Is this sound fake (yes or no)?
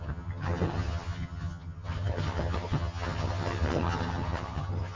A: yes